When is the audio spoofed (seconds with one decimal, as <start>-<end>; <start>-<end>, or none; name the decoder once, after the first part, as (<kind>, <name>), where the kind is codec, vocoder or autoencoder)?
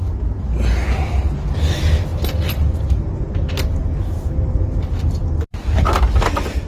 none